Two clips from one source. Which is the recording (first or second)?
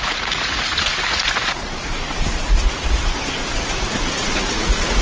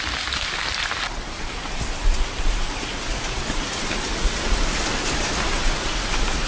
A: second